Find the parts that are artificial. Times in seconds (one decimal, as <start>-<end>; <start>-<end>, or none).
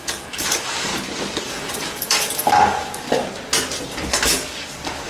0.0-0.9; 1.4-3.2; 4.1-5.1